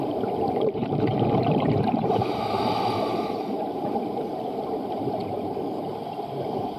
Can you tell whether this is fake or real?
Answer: fake